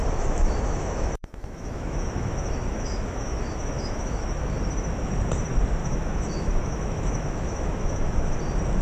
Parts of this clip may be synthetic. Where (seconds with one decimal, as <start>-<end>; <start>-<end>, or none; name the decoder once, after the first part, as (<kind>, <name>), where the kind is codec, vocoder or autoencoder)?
0.0-4.6 (autoencoder, DAC-VAE); 5.8-8.4